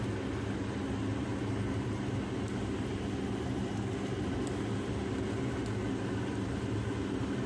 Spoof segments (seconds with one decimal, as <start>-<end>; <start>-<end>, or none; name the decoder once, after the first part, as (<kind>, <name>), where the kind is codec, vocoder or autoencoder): none